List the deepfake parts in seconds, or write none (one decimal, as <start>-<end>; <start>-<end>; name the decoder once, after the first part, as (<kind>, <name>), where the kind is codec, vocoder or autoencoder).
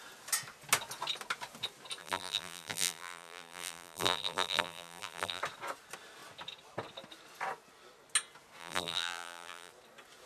2.0-5.4 (vocoder, BigVGAN v2); 8.6-9.7